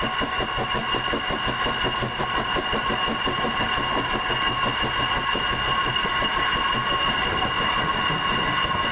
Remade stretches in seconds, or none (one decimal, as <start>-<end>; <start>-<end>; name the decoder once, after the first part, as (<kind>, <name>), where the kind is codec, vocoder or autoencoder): none

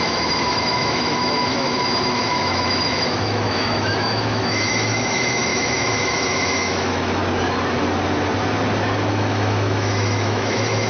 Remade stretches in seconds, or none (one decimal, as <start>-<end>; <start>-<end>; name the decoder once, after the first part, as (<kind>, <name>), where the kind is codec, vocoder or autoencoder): 0.0-7.2 (autoencoder, DAC-VAE); 9.1-10.9

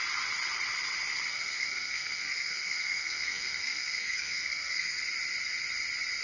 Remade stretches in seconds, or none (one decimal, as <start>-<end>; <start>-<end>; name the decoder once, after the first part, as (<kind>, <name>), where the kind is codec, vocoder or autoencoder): 1.3-5.0 (codec, SNAC)